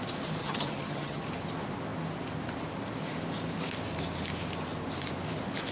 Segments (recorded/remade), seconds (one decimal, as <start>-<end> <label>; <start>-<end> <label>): 0.0-0.4 recorded; 0.4-1.2 remade; 1.2-5.7 recorded